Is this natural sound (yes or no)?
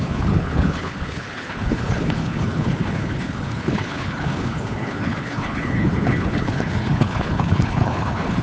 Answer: no